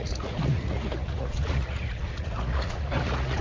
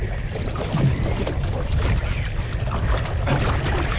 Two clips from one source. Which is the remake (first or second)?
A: first